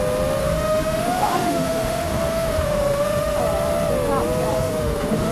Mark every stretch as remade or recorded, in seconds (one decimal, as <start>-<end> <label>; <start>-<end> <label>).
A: 0.0-0.4 recorded; 0.4-3.4 remade; 3.4-4.5 recorded; 4.5-5.3 remade